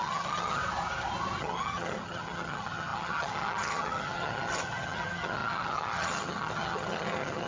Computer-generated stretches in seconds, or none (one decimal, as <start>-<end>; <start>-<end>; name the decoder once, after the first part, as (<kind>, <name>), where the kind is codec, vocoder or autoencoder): 0.0-0.6 (vocoder, HiFi-GAN); 1.4-7.5